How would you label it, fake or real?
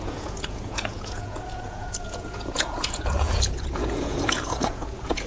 fake